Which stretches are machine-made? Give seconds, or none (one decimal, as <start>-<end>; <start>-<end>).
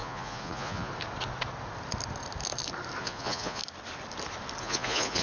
0.0-0.9; 3.0-3.6; 4.6-5.2